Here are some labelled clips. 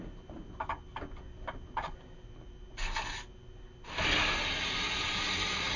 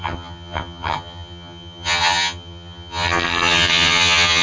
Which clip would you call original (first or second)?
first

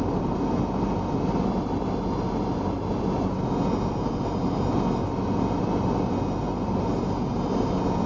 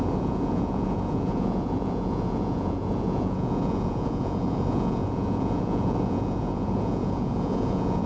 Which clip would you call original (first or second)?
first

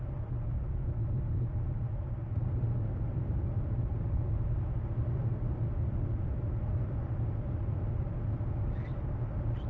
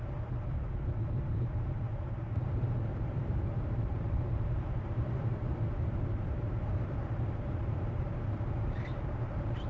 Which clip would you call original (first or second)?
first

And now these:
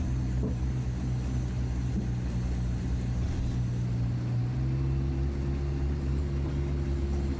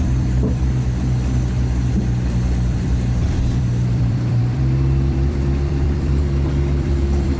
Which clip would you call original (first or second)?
first